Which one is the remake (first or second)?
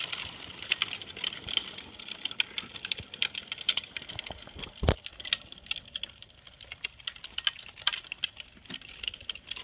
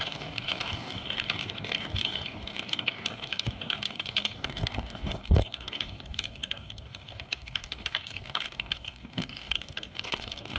second